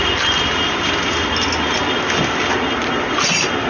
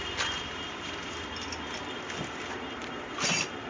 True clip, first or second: first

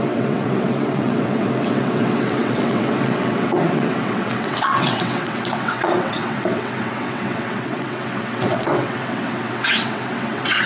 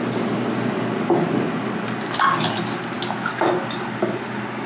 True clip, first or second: second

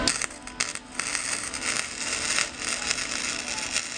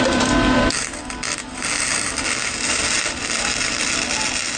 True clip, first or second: first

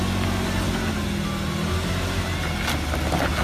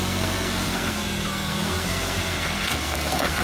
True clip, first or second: first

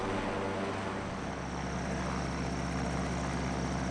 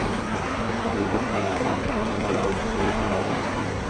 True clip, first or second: first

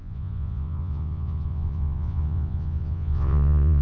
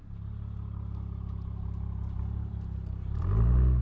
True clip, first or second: second